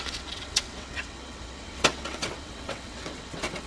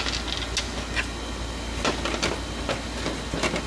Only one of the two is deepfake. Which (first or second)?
first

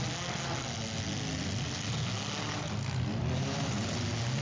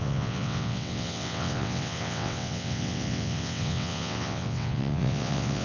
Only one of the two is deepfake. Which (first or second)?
second